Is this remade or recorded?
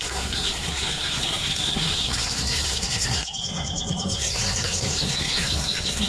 remade